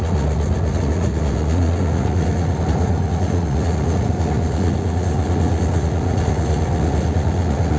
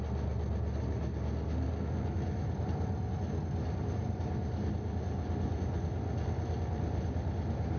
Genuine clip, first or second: second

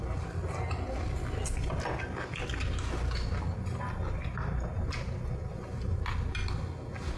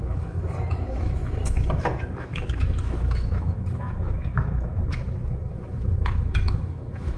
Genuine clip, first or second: first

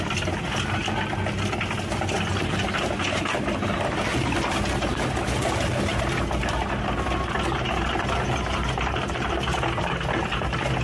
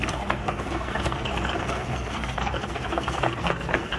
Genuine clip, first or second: first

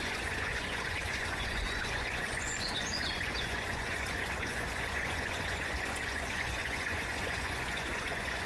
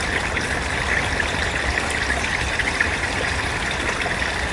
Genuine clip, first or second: second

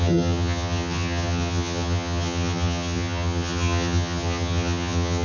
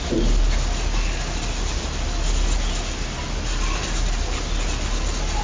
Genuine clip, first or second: second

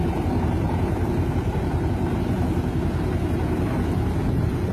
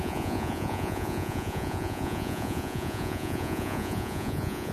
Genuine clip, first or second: first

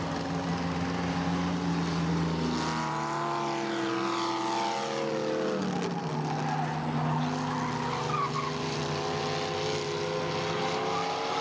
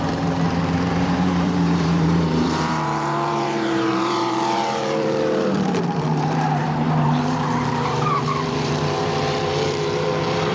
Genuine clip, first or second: first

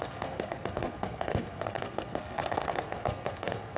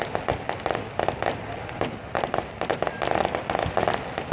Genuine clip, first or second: second